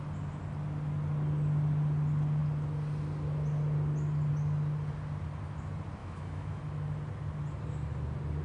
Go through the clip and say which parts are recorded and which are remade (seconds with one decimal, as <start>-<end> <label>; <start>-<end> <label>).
0.0-6.0 recorded; 6.0-6.6 remade; 6.6-8.4 recorded